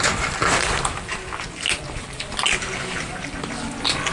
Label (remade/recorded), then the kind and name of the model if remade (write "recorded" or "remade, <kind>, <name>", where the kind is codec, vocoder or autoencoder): recorded